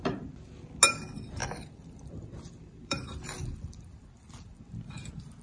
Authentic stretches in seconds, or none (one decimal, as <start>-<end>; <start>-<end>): 0.0-1.4; 4.6-5.4